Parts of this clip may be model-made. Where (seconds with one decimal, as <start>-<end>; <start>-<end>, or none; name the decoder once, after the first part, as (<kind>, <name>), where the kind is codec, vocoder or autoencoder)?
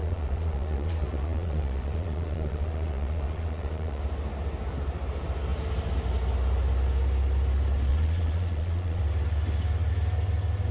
0.0-4.0 (vocoder, Vocos); 7.9-9.0